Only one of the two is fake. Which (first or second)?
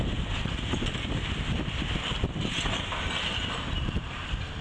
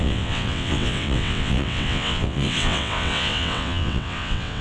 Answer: second